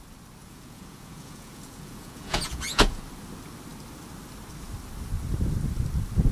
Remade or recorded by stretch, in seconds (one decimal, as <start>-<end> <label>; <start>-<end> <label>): 0.0-0.4 recorded; 0.4-3.0 remade; 3.0-6.3 recorded